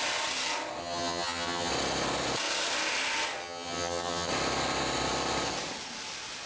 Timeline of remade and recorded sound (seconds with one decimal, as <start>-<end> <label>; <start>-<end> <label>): 0.0-0.8 recorded; 0.8-1.7 remade; 1.7-3.4 recorded; 3.4-4.3 remade; 4.3-6.5 recorded